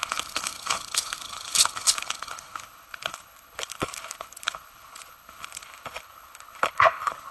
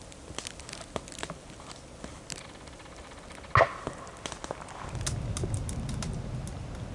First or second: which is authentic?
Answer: second